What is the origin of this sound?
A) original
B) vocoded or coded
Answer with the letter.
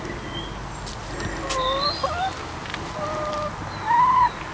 A